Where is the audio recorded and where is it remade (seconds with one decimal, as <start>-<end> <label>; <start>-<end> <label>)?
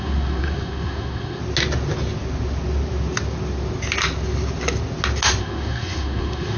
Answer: 0.0-1.4 remade; 1.4-5.4 recorded; 5.4-6.6 remade